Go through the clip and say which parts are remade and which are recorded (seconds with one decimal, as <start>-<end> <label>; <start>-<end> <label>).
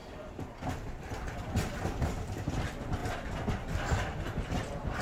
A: 0.0-2.5 remade; 2.5-5.0 recorded